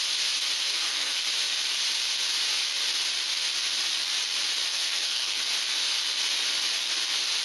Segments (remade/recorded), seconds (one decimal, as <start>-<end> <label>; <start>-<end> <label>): 0.0-0.6 recorded; 0.6-1.2 remade; 1.2-4.7 recorded; 4.7-5.4 remade; 5.4-7.4 recorded